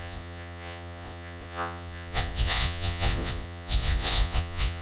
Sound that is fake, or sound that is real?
fake